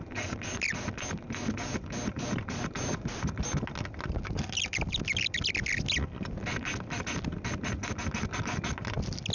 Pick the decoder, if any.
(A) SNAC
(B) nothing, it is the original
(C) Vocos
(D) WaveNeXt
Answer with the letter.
B